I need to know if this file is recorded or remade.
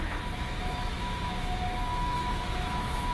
remade